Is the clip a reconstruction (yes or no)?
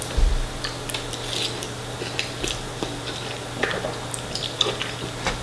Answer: no